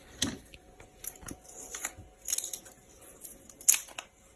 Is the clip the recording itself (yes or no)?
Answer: yes